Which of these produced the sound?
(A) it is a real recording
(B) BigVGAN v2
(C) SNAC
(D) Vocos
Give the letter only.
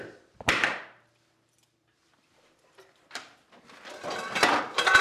B